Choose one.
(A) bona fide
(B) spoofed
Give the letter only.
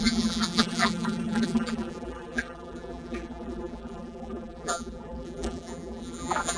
B